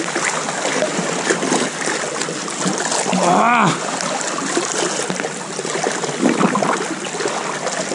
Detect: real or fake real